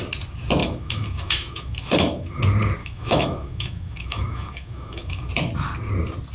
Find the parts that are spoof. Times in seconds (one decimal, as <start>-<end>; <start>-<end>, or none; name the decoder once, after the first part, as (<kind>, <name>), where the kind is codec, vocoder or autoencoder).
0.6-2.4 (autoencoder, DAC-VAE); 2.8-5.3